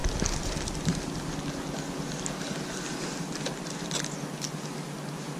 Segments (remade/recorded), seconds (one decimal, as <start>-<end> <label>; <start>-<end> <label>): 0.0-5.4 recorded